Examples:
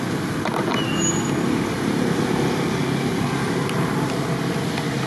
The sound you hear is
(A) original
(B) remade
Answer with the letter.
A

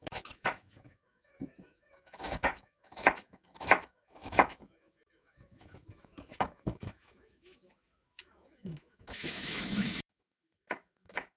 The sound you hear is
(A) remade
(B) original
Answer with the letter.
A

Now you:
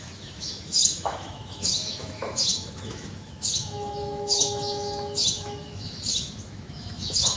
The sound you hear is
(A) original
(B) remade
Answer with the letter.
B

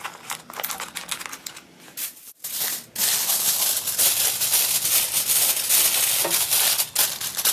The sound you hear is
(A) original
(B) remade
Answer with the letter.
A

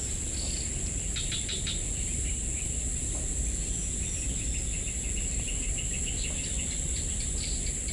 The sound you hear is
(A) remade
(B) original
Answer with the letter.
B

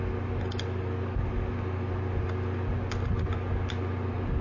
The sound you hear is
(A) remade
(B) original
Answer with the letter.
B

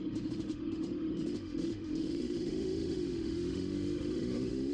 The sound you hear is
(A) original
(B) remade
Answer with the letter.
B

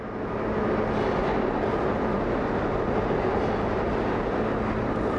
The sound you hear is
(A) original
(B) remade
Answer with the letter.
A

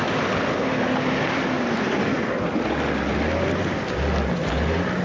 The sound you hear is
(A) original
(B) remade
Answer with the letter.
A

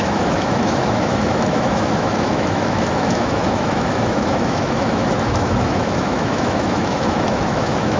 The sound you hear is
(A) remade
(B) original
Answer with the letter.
A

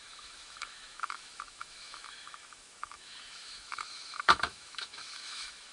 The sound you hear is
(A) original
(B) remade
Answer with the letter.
B